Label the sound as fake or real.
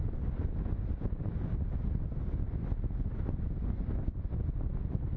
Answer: real